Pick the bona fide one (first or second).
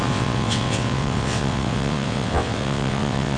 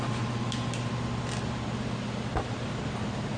second